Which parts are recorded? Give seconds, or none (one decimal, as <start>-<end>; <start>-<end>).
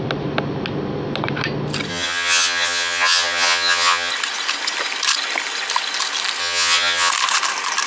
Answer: 0.0-1.9; 4.1-6.4; 7.1-7.9